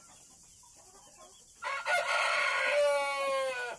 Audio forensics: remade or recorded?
recorded